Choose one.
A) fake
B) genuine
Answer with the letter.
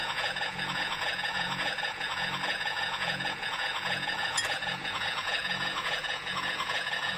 A